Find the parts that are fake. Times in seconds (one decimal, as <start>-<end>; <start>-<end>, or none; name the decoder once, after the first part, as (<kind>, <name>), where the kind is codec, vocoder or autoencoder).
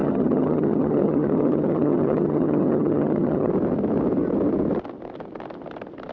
0.0-3.5 (vocoder, HiFi-GAN)